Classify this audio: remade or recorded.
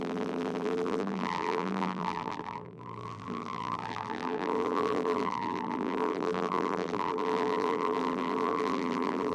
remade